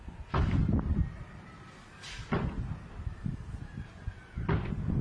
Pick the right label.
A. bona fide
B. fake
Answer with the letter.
B